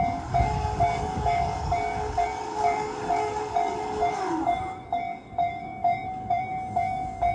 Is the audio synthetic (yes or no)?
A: yes